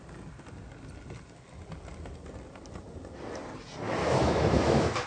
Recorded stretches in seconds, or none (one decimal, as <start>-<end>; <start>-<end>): 0.0-4.0